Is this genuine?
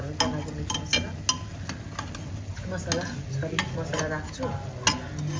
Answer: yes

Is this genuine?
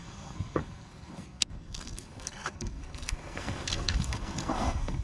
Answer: no